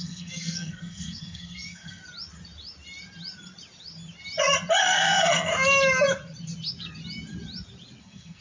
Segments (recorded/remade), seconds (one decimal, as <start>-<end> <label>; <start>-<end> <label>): 0.0-2.0 remade; 2.0-4.8 recorded; 4.8-5.5 remade; 5.5-8.0 recorded; 8.0-8.4 remade